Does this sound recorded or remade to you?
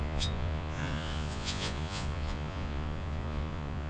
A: remade